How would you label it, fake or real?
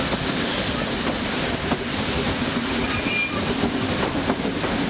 real